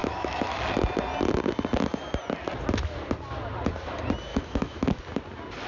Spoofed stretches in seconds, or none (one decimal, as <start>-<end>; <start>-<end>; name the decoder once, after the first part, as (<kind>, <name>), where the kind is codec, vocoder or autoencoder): 0.0-0.6 (autoencoder, DAC-VAE); 4.3-5.0